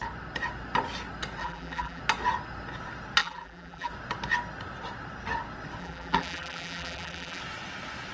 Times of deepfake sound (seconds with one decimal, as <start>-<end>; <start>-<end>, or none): 1.4-2.0; 3.2-3.9; 5.8-7.4